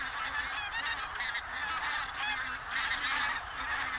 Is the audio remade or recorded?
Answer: recorded